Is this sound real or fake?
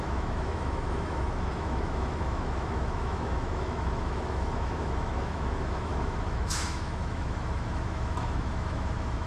fake